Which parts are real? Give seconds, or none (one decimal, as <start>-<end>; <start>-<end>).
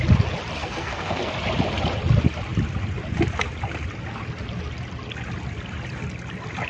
0.0-0.6; 1.3-6.7